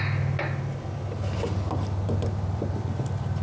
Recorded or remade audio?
recorded